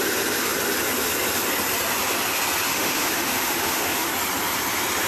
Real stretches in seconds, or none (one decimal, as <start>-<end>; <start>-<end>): 0.0-2.7; 4.1-5.1